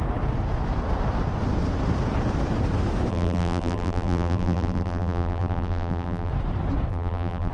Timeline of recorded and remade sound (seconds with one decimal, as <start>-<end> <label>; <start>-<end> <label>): 0.0-3.1 recorded; 3.1-6.3 remade; 6.3-6.9 recorded; 6.9-7.5 remade